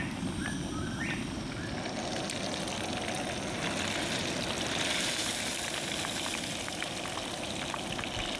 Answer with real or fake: real